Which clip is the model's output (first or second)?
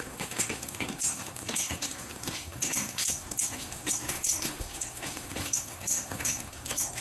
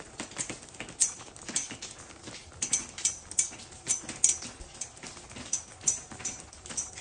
first